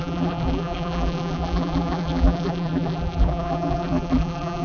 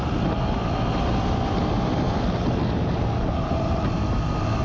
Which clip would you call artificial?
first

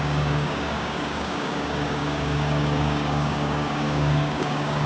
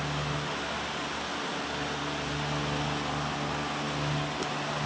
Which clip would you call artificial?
first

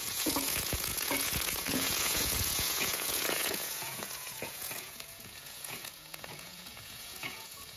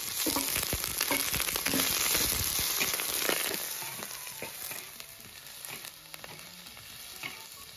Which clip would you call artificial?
first